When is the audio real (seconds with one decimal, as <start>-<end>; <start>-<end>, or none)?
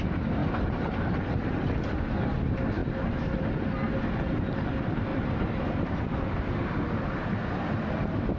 0.0-0.4; 1.6-5.1; 6.0-8.4